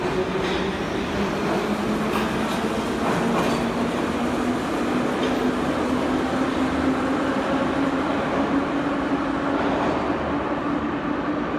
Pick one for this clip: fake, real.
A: real